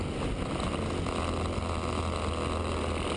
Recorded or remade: recorded